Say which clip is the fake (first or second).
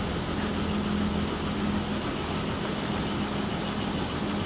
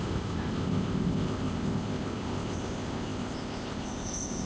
second